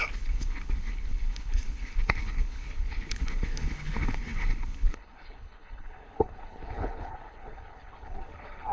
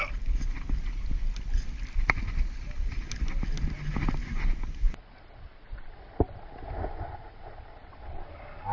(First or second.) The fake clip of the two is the first